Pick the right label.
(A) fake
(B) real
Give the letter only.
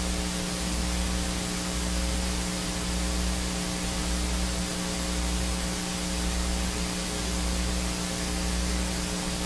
B